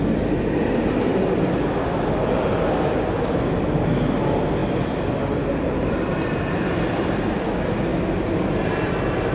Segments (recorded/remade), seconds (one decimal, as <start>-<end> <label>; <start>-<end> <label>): 0.0-9.3 recorded